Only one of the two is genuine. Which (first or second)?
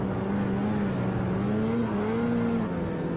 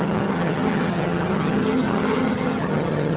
first